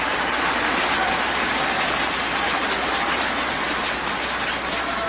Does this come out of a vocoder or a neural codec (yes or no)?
no